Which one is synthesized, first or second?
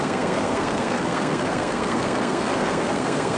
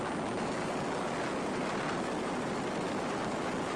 first